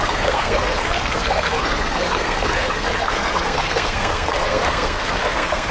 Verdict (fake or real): fake